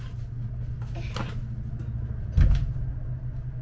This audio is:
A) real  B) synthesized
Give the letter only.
A